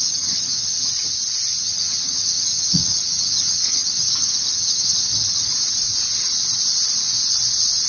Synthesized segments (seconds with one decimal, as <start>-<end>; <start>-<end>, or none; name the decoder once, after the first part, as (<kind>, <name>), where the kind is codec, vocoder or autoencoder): 0.0-0.9 (vocoder, HiFi-GAN); 1.6-5.5